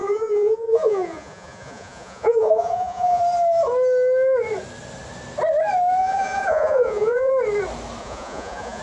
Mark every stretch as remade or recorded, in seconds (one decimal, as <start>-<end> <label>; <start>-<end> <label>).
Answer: 0.0-3.2 remade; 3.2-6.0 recorded; 6.0-7.3 remade; 7.3-8.0 recorded; 8.0-8.8 remade